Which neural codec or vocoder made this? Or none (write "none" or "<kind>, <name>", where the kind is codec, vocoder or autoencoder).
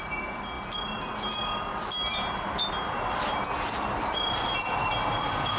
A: none